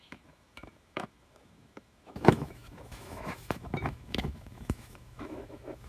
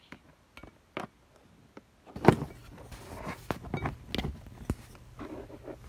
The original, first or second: second